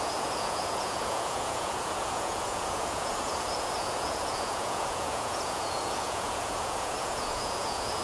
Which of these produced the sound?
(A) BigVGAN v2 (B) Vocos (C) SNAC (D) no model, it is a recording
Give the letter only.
B